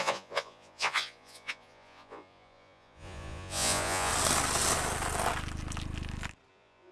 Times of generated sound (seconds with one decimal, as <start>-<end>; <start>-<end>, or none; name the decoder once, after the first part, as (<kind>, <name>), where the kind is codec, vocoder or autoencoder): 0.0-4.1 (vocoder, Vocos); 6.5-6.9